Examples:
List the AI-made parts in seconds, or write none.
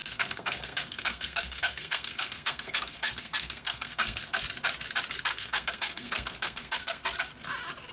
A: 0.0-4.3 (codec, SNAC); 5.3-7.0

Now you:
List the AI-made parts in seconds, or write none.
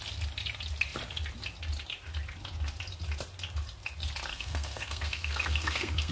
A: 4.3-6.1 (codec, SNAC)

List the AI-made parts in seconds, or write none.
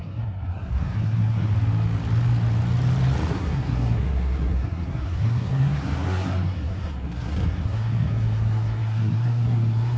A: 0.0-1.5 (codec, SNAC); 3.3-10.0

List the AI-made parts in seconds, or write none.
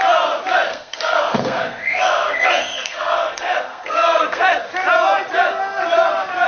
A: 0.7-4.6 (codec, SNAC)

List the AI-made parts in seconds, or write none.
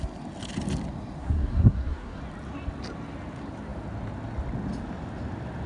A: 1.2-2.2 (codec, SNAC)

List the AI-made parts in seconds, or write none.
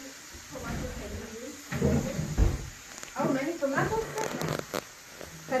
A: none